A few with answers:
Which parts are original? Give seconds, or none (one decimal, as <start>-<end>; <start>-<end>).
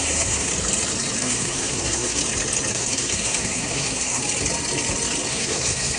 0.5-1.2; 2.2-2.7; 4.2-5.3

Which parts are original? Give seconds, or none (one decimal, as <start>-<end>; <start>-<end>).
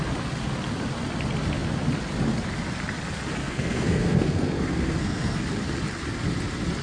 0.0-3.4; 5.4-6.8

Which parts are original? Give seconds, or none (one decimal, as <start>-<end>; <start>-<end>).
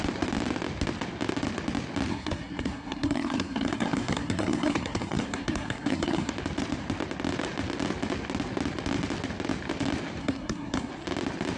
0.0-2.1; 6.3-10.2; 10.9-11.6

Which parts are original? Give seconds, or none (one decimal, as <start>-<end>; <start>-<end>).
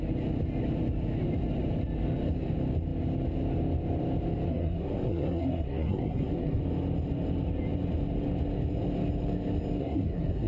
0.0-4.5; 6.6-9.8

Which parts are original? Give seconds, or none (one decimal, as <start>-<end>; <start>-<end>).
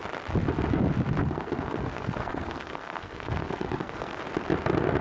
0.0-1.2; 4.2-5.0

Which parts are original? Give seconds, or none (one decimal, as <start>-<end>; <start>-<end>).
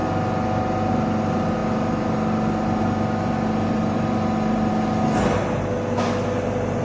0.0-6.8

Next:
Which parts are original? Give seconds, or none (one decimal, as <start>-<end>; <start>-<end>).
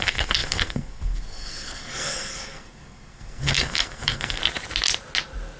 4.4-5.6